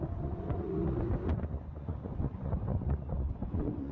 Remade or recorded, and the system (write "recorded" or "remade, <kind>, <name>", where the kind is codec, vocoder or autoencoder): remade, vocoder, Vocos